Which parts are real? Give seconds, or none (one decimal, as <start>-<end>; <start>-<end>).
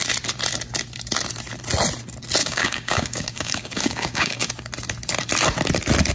0.0-2.4; 4.5-6.1